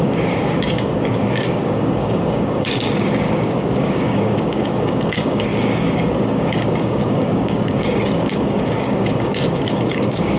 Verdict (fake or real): fake